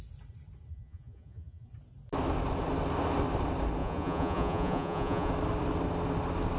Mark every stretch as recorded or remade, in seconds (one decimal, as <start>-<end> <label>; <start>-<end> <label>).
0.0-0.7 recorded; 0.7-1.7 remade; 1.7-3.8 recorded; 3.8-5.3 remade; 5.3-6.6 recorded